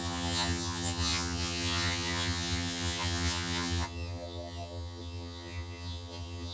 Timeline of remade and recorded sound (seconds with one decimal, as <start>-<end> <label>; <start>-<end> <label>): 0.0-6.5 remade